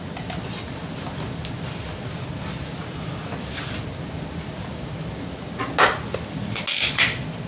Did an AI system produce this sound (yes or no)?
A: no